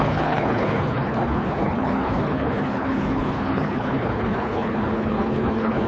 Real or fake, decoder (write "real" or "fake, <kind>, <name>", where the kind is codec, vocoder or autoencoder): fake, codec, HILCodec